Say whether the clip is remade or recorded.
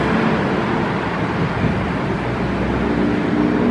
recorded